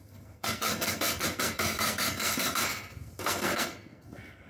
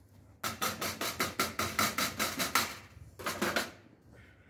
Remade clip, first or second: first